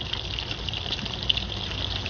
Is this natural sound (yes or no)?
yes